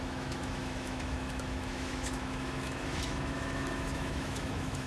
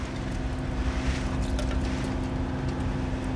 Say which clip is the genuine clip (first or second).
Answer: second